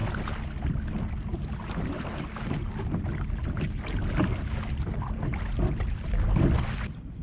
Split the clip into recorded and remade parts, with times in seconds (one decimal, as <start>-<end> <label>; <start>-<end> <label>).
0.0-7.2 recorded